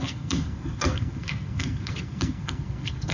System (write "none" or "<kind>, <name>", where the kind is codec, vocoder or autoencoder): codec, SNAC